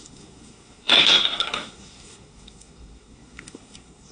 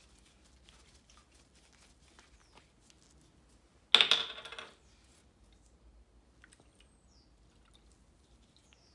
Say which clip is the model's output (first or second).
first